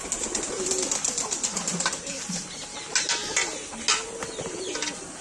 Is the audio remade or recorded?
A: recorded